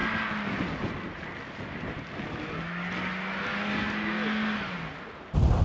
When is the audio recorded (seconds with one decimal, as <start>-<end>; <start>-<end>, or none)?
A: 0.0-5.6